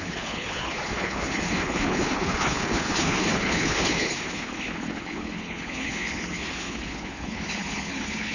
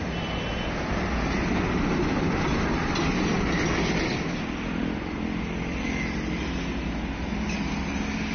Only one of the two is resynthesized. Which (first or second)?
first